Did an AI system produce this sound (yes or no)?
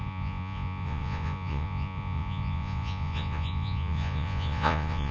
yes